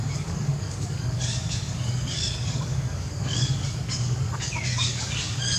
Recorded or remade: remade